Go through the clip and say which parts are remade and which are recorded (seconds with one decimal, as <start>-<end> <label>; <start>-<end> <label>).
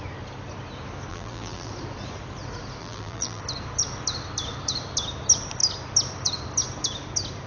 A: 0.0-1.1 recorded; 1.1-1.7 remade; 1.7-2.8 recorded; 2.8-3.4 remade; 3.4-7.5 recorded